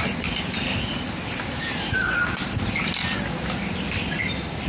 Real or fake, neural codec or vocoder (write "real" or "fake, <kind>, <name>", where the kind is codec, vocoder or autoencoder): real